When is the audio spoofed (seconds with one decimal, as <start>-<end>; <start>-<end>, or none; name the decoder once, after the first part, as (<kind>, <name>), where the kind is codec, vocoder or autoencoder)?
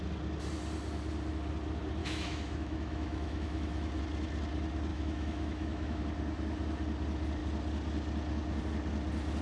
2.0-4.0 (autoencoder, DAC-VAE); 4.9-6.0